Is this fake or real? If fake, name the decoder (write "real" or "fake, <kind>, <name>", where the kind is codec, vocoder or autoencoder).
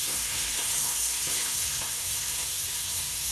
fake, codec, SNAC